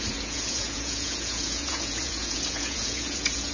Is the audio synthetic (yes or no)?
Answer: yes